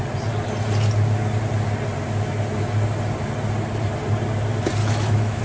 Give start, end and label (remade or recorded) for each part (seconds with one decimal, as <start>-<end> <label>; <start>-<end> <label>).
0.0-4.8 recorded; 4.8-5.4 remade